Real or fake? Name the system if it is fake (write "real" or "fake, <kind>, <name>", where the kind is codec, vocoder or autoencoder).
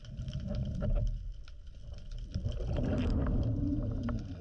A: real